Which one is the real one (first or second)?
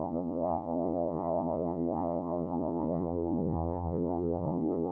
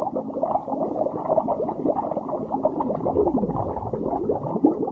second